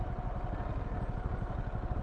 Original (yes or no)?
yes